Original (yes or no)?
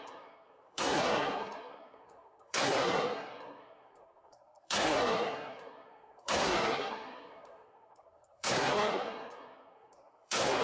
no